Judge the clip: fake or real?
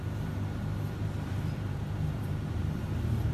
fake